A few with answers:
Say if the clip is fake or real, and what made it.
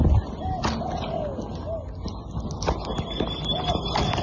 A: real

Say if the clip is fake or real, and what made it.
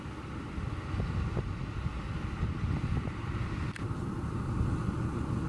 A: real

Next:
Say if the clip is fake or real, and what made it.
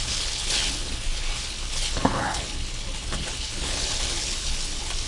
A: fake, codec, HILCodec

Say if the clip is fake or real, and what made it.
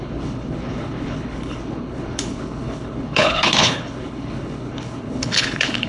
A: fake, codec, HILCodec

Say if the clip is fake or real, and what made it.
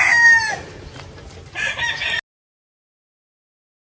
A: real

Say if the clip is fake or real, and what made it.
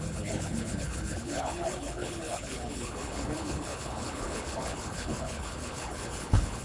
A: fake, codec, HILCodec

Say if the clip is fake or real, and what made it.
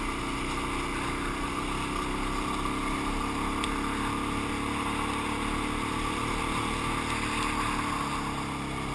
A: real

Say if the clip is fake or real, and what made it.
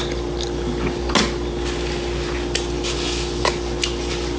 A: real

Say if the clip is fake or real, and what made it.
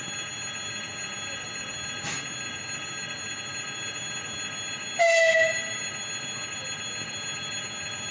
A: real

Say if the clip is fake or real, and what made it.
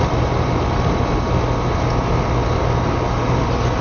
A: real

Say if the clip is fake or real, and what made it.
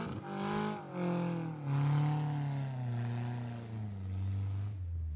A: real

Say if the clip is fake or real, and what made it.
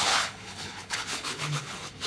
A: fake, codec, HILCodec